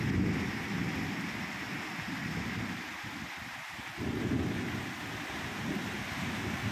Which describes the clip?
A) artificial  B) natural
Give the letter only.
B